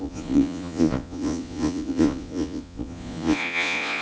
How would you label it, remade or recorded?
remade